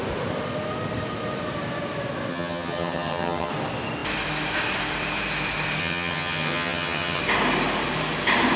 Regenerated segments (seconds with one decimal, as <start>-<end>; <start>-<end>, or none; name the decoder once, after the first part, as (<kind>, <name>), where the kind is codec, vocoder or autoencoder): 2.3-3.5 (vocoder, HiFi-GAN); 5.8-7.2